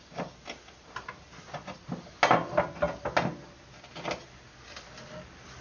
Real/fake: real